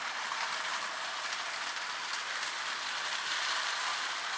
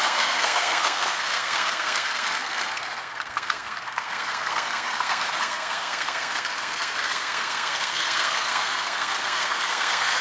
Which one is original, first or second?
first